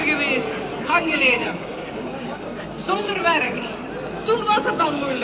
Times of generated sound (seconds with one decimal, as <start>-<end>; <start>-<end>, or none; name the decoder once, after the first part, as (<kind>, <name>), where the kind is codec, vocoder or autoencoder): 0.8-3.6 (codec, DAC); 4.1-5.2